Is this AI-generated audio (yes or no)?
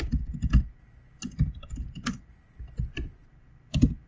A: no